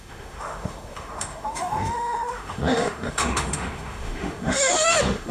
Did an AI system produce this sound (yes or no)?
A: yes